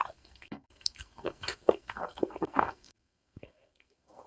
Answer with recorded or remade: remade